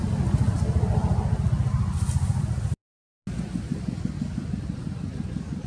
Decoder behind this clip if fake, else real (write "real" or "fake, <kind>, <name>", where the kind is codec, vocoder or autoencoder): real